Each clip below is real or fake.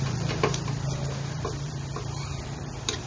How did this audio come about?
fake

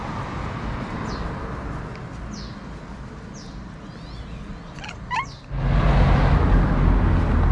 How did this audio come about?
real